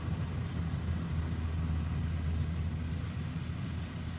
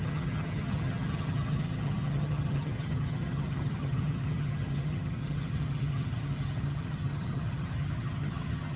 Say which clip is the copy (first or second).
second